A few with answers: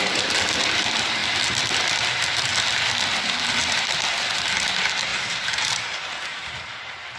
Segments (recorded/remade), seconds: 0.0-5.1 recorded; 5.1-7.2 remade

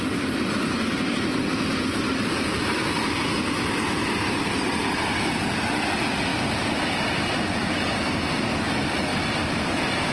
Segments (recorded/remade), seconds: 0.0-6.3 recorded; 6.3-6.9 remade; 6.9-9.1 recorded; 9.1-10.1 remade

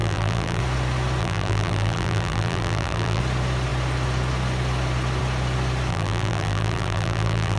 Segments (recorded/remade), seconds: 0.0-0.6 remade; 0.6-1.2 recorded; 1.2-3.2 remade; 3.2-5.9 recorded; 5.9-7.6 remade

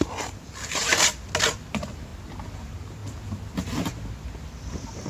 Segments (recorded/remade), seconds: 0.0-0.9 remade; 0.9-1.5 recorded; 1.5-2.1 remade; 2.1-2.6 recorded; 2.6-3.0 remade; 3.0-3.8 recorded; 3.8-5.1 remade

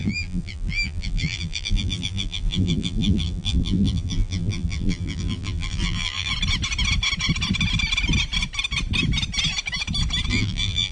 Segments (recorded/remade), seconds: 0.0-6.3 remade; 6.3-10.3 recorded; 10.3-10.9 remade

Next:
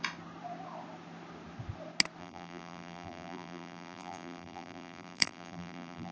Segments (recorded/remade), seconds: 0.0-2.2 recorded; 2.2-6.1 remade